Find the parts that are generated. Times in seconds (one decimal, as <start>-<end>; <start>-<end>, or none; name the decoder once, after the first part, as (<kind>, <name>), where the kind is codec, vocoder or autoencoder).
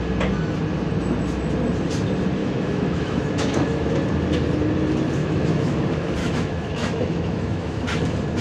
2.4-3.9 (autoencoder, DAC-VAE); 5.2-5.8; 6.2-7.8